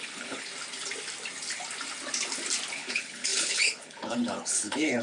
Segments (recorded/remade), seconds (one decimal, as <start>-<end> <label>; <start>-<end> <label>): 0.0-0.5 remade; 0.5-2.7 recorded; 2.7-5.0 remade